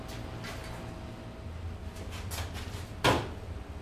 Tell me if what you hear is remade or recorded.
recorded